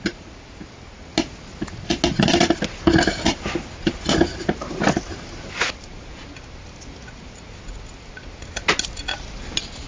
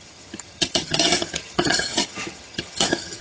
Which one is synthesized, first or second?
second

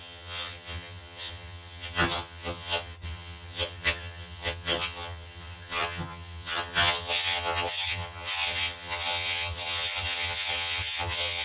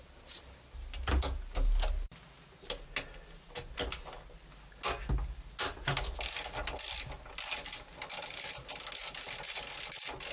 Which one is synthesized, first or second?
first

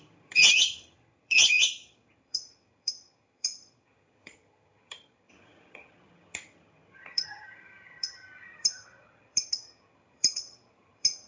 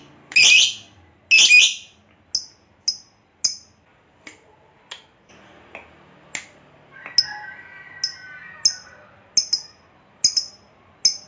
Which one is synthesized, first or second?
first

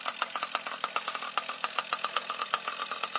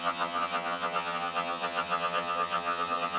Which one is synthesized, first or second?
second